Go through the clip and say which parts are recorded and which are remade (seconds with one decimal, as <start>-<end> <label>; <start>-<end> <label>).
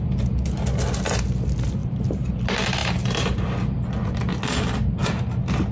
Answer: 0.0-1.8 recorded; 1.8-2.3 remade; 2.3-2.8 recorded; 2.8-3.4 remade; 3.4-5.7 recorded